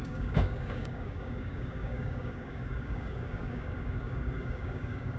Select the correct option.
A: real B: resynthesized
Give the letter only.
B